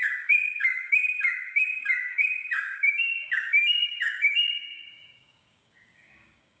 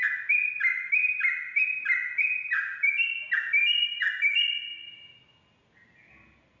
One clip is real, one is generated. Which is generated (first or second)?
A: first